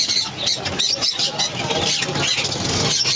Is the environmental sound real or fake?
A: real